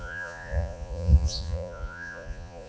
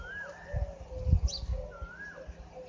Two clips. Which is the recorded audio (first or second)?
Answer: second